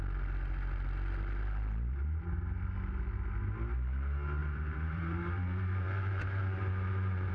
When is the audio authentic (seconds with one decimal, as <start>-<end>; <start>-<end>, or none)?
0.0-4.4